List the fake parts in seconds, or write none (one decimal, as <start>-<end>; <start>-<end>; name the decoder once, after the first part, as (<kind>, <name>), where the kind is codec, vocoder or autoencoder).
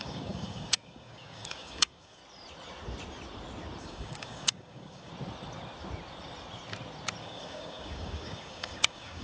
0.0-2.2 (codec, DAC); 3.8-5.1; 7.2-9.2